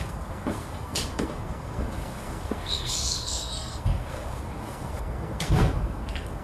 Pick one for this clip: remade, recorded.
remade